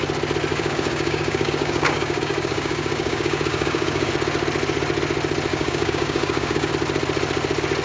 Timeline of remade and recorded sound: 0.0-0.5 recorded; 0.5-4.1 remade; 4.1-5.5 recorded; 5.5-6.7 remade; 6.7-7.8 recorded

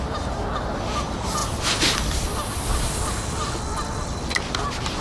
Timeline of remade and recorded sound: 0.0-5.0 recorded

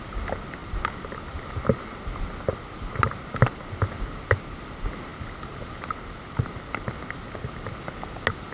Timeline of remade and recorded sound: 0.0-8.5 recorded

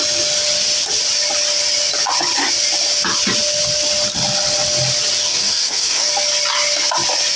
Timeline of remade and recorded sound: 0.0-5.2 recorded; 5.2-6.1 remade; 6.1-7.4 recorded